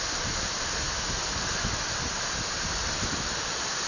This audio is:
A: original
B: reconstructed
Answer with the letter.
A